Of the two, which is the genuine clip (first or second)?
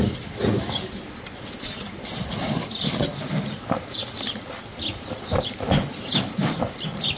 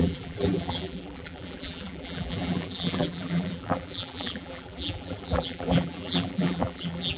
first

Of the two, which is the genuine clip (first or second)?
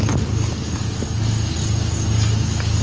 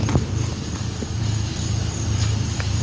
first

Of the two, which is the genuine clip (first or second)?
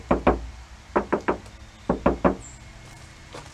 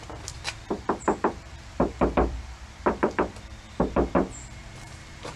first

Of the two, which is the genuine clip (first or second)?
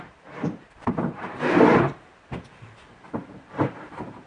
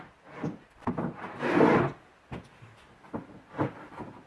second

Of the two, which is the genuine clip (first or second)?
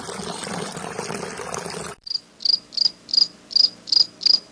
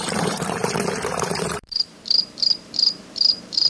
first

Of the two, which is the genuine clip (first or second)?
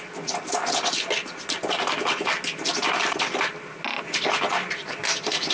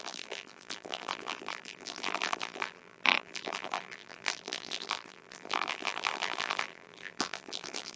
first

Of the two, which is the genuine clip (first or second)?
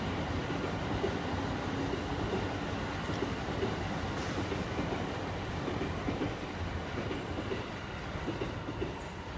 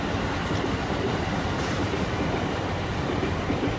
first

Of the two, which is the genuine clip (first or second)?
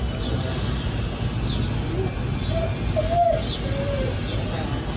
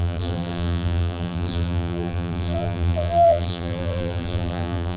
first